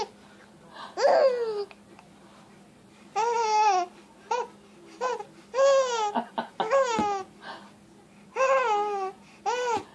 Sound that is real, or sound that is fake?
real